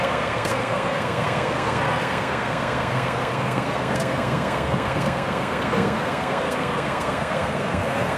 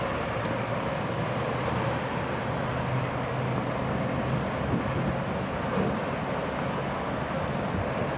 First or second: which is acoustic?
second